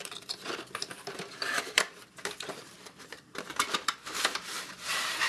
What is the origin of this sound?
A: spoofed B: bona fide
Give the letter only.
A